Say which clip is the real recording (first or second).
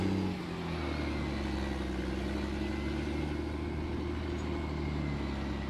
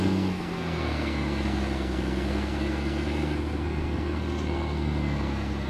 first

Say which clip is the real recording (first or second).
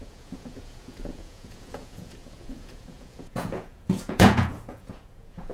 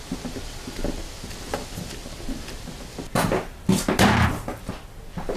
second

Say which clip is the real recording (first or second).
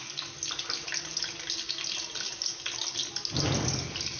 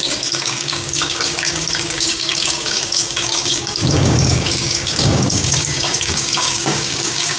first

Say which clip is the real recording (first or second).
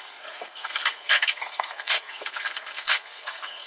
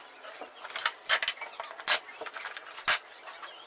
second